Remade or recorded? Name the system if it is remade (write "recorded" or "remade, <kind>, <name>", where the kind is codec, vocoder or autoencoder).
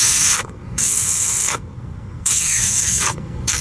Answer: remade, codec, SNAC